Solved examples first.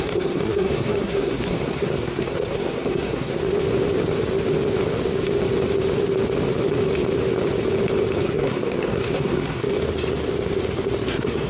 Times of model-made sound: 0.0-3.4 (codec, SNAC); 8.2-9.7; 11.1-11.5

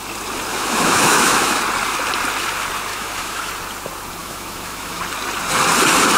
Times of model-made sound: 0.5-1.6 (autoencoder, DAC-VAE); 2.9-3.5; 4.2-5.0